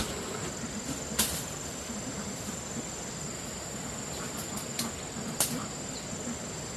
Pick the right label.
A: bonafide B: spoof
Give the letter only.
A